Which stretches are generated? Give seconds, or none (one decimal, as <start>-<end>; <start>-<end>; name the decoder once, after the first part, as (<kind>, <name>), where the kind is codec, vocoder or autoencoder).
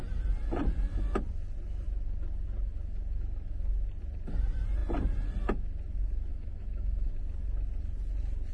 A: 6.3-7.1 (autoencoder, DAC-VAE)